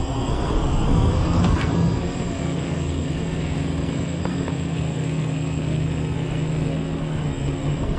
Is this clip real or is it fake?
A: fake